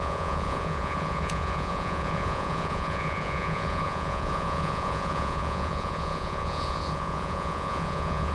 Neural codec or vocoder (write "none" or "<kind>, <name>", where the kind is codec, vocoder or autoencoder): vocoder, Vocos